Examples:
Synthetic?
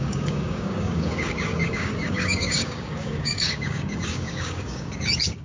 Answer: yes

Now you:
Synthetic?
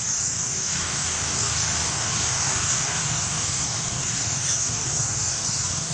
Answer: yes